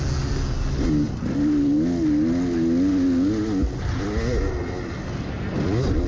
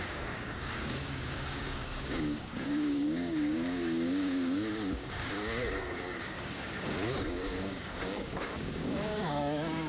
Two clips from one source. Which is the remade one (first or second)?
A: second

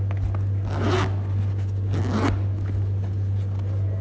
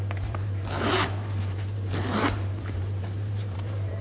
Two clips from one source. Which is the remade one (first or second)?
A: second